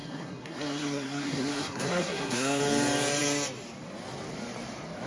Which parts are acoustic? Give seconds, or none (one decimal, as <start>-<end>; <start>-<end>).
2.6-5.1

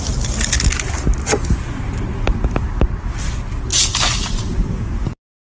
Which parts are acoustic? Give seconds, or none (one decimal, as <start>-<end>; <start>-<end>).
0.0-1.1; 3.1-5.5

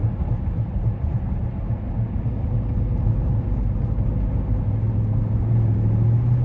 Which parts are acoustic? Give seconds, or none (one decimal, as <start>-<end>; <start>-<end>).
0.0-6.4

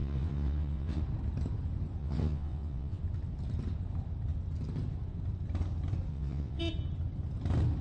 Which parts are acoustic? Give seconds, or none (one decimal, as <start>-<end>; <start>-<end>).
1.0-2.0; 3.0-6.1; 6.6-7.8

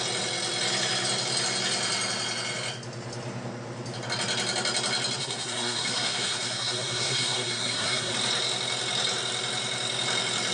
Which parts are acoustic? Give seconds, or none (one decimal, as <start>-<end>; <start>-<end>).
0.0-5.2; 8.1-10.5

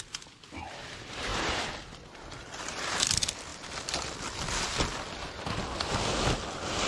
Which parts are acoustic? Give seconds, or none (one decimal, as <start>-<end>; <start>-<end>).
0.0-6.9

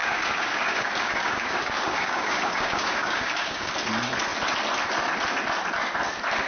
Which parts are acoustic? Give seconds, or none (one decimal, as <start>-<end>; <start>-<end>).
3.7-6.5

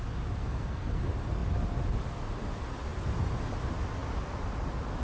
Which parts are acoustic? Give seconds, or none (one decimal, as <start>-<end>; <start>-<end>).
0.0-0.4; 1.0-5.0